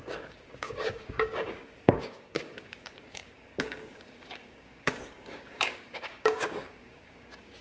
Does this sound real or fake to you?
fake